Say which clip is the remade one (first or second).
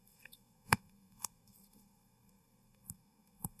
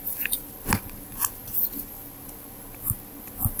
first